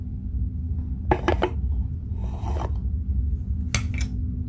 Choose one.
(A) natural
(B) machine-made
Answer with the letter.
A